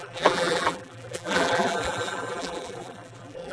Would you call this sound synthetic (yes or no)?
yes